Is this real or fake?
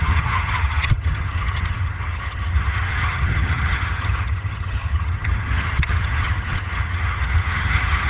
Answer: fake